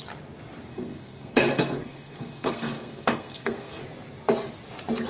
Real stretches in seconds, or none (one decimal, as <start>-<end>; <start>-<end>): 0.0-0.7; 3.8-5.1